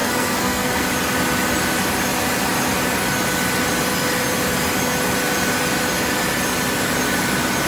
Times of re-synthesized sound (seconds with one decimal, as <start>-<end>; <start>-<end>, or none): 0.0-0.9